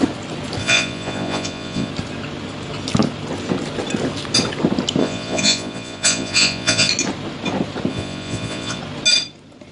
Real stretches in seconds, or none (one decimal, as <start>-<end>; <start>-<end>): 0.0-0.6; 1.9-5.0; 6.9-7.9; 8.8-9.7